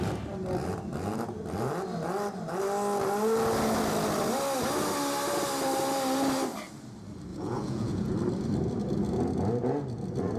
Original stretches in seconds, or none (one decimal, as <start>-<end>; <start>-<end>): 0.0-7.3; 8.1-10.4